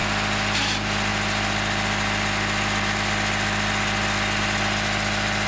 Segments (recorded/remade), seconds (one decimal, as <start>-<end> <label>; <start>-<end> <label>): 0.0-5.5 recorded